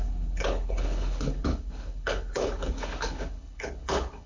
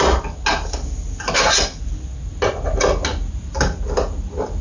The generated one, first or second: first